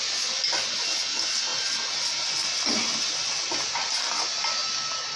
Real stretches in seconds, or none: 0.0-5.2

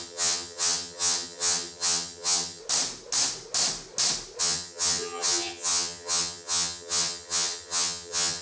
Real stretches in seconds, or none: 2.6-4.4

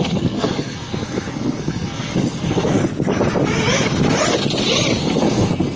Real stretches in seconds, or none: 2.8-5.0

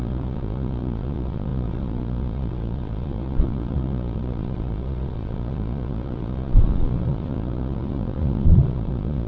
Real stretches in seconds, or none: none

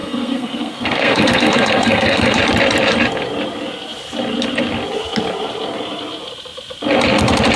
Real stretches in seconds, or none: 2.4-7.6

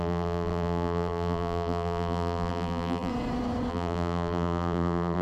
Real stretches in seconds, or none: 3.1-3.7

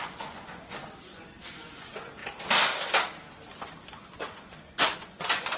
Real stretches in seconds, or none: 2.2-3.9

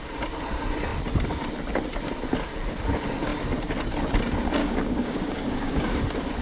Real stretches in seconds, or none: 0.0-4.6; 6.0-6.4